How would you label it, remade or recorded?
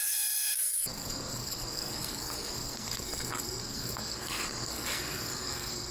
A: remade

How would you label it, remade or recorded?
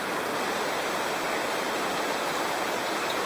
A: recorded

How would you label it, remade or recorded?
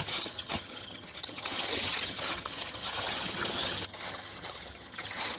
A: remade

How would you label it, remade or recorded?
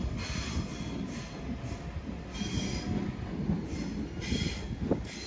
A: recorded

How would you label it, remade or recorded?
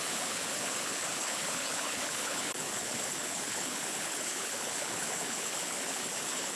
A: remade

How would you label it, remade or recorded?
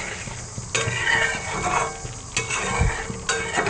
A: recorded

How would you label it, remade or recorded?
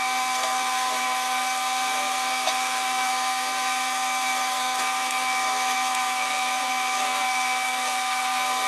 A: remade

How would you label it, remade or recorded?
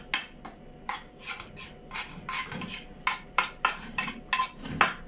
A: recorded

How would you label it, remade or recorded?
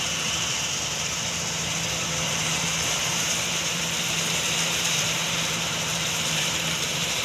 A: remade